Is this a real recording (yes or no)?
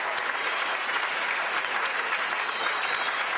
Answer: no